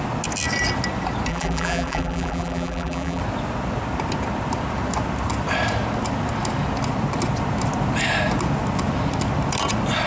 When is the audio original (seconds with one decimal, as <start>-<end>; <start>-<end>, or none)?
0.0-1.3; 3.2-10.1